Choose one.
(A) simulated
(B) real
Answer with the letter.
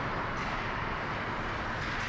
B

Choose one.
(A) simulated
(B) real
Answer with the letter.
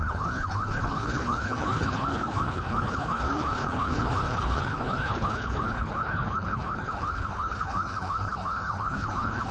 A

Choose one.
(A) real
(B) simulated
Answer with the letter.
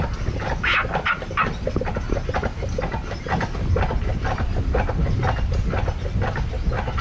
A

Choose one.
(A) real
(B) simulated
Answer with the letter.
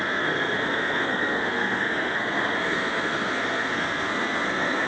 B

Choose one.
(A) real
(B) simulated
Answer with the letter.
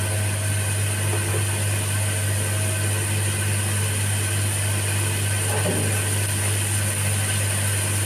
A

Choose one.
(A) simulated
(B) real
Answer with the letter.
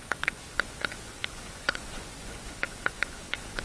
A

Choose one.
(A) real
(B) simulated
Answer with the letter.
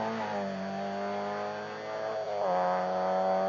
A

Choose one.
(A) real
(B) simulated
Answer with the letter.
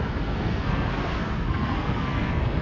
B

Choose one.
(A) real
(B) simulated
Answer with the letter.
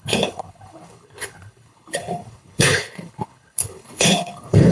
B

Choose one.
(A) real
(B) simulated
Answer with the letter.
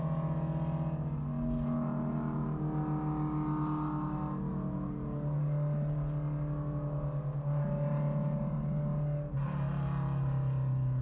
A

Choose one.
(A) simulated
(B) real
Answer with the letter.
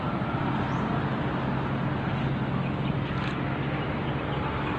B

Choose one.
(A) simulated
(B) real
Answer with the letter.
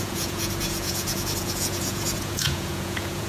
A